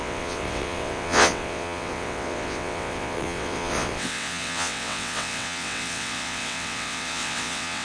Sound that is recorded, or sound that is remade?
remade